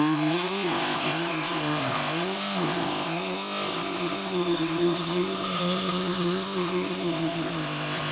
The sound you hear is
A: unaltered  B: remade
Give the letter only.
B